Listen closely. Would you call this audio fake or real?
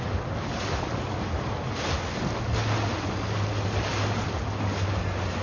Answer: real